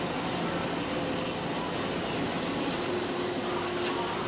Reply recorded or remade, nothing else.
recorded